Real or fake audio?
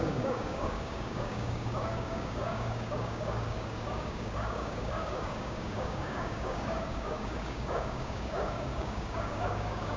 fake